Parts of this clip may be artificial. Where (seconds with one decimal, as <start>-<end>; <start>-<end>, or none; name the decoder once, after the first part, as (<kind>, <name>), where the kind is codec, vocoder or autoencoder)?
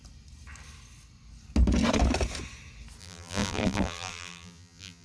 3.0-5.0 (vocoder, BigVGAN v2)